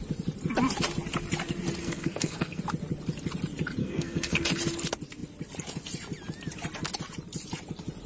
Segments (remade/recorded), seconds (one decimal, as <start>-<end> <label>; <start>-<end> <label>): 0.0-1.8 recorded; 1.8-2.6 remade; 2.6-3.8 recorded; 3.8-4.6 remade; 4.6-8.1 recorded